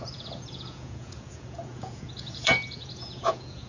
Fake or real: fake